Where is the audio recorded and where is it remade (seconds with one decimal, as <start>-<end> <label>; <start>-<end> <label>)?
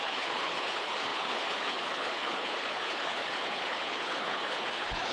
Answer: 0.0-5.1 remade